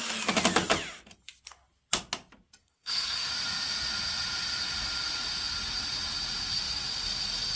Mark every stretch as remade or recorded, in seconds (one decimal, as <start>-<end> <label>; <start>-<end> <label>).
0.0-2.6 recorded; 2.6-3.3 remade; 3.3-7.6 recorded